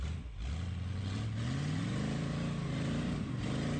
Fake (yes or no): no